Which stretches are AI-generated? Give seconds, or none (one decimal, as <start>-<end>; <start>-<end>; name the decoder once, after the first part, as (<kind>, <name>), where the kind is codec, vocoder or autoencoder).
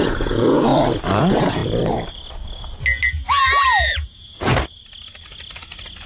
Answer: 0.0-0.7 (vocoder, Vocos); 1.2-1.6; 3.1-4.5